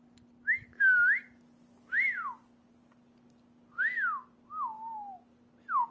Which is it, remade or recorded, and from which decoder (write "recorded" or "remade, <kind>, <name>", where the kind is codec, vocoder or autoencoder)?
recorded